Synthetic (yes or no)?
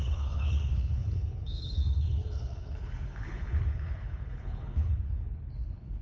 yes